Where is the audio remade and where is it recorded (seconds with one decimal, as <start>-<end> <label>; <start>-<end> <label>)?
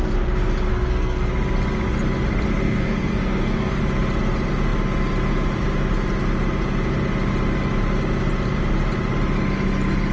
0.0-0.7 recorded; 0.7-1.3 remade; 1.3-2.6 recorded; 2.6-3.8 remade; 3.8-10.1 recorded